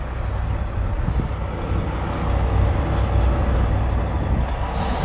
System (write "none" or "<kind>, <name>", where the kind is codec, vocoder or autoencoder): none